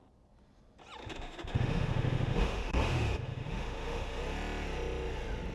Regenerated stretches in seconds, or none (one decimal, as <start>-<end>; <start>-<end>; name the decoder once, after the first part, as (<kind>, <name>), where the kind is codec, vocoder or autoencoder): 1.0-4.2 (autoencoder, DAC-VAE)

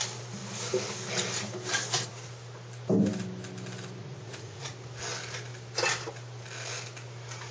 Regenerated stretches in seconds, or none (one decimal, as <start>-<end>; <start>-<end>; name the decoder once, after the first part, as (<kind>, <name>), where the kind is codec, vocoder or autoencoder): 4.0-4.7 (vocoder, Vocos)

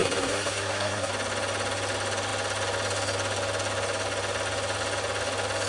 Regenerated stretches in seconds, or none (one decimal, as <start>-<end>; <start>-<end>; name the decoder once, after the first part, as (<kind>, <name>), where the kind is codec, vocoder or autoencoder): 0.0-1.1 (codec, SNAC)